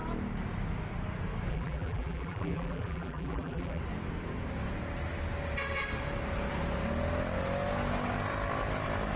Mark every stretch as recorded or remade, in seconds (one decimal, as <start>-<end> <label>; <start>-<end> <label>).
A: 0.0-1.5 recorded; 1.5-3.8 remade; 3.8-9.2 recorded